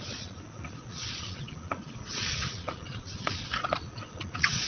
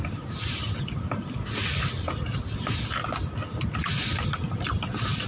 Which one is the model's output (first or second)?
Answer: first